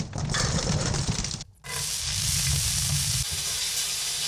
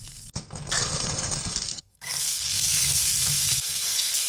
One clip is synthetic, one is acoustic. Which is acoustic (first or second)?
first